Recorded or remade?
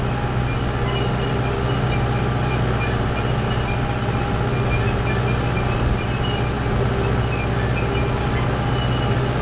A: recorded